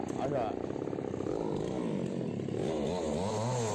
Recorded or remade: recorded